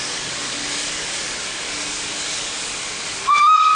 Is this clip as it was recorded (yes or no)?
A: no